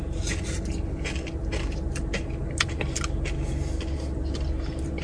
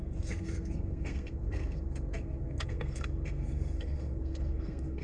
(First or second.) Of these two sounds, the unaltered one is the first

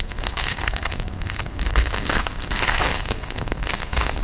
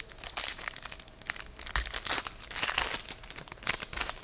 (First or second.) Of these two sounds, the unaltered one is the second